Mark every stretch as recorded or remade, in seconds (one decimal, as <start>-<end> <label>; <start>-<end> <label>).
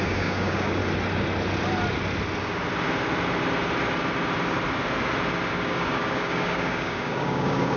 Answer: 0.0-0.8 remade; 0.8-5.5 recorded; 5.5-7.8 remade